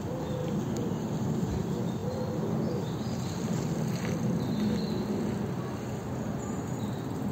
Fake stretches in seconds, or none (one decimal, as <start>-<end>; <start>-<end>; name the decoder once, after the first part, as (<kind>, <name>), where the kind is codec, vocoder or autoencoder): none